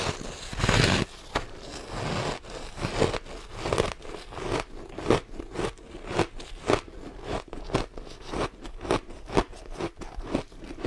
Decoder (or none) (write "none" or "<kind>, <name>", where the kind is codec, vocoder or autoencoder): none